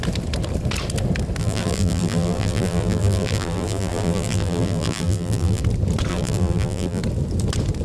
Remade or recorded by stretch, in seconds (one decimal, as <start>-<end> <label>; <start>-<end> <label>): 0.0-1.4 recorded; 1.4-5.6 remade; 5.6-6.1 recorded; 6.1-7.0 remade; 7.0-7.8 recorded